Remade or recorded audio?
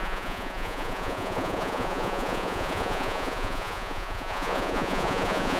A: remade